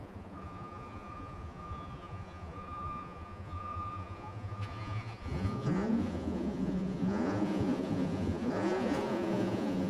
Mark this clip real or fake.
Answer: fake